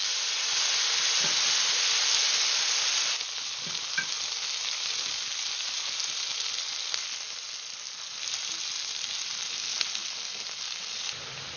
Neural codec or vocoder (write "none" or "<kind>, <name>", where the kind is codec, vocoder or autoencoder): none